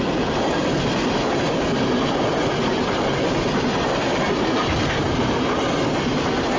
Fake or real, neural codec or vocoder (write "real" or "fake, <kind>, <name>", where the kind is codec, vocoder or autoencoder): real